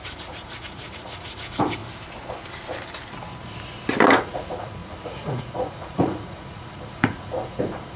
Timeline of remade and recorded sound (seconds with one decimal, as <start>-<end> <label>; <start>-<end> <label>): 0.0-1.8 remade; 1.8-4.2 recorded; 4.2-8.0 remade